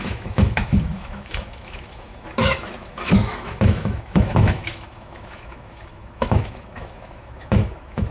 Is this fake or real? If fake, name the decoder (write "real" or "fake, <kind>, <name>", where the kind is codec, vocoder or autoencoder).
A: fake, autoencoder, DAC-VAE